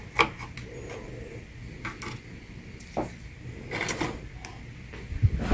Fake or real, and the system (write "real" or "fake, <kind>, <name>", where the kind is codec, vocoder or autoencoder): real